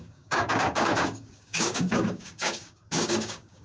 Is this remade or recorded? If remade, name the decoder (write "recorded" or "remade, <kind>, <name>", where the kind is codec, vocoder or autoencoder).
remade, codec, DAC